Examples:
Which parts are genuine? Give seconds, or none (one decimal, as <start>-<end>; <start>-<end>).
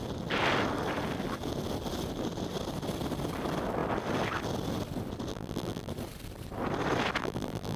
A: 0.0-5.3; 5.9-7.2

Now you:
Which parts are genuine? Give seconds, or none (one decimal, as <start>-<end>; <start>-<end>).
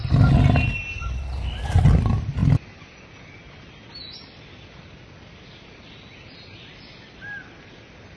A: 0.0-8.2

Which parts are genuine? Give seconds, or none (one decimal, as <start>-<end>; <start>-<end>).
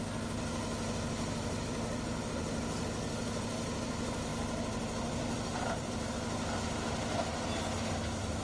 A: 0.0-4.3; 6.1-8.4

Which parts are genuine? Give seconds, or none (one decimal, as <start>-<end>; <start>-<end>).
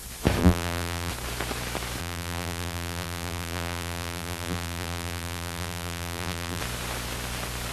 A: 0.0-0.4; 1.1-2.0; 6.6-7.7